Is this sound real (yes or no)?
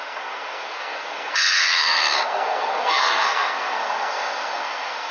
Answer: no